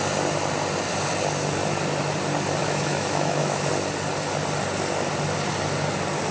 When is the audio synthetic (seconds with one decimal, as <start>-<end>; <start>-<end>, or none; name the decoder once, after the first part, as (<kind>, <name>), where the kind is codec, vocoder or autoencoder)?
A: 2.6-3.7 (autoencoder, DAC-VAE)